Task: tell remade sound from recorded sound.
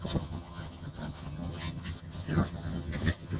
remade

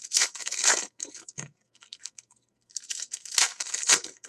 remade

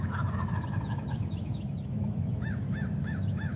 remade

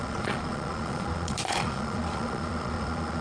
remade